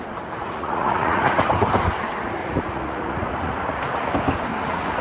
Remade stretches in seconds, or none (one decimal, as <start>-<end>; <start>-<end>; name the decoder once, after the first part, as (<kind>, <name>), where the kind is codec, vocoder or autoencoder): 0.4-1.5 (vocoder, Vocos); 2.4-4.1; 4.5-5.0